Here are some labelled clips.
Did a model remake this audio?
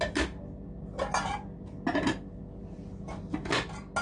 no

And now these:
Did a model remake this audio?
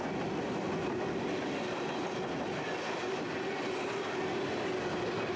no